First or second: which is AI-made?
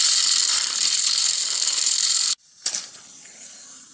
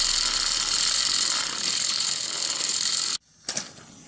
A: first